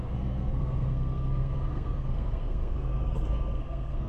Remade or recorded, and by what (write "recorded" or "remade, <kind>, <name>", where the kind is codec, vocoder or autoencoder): remade, codec, SNAC